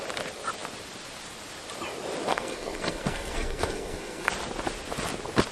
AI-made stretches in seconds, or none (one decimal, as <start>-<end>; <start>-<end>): 2.3-4.3